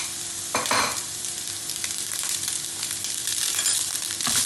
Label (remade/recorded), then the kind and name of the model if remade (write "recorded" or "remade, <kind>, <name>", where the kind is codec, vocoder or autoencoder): remade, vocoder, BigVGAN v2